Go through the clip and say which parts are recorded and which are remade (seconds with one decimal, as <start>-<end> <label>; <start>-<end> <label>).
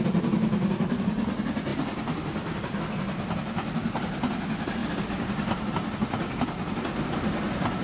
0.0-7.8 recorded